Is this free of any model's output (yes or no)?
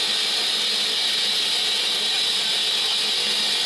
yes